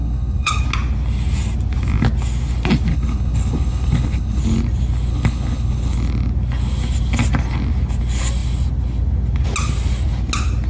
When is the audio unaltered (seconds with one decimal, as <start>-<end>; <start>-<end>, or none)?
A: 0.6-2.9; 4.4-5.1; 5.9-10.7